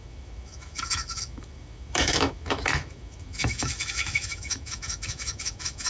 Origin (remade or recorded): remade